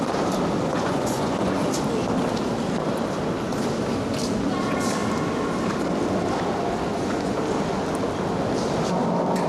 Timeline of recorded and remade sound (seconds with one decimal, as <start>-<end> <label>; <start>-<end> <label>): 0.0-0.7 recorded; 0.7-1.6 remade; 1.6-6.9 recorded; 6.9-7.4 remade; 7.4-9.5 recorded